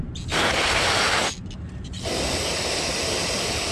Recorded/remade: recorded